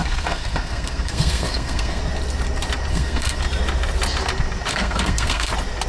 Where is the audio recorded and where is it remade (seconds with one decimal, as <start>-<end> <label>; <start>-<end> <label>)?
0.0-2.0 remade; 2.0-2.9 recorded; 2.9-3.4 remade; 3.4-4.7 recorded; 4.7-5.5 remade; 5.5-5.9 recorded